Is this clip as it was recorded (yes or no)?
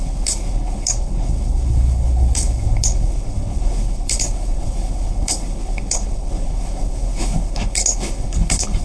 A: no